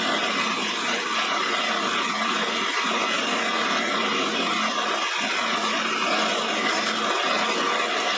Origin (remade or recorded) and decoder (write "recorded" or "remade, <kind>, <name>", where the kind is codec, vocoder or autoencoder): recorded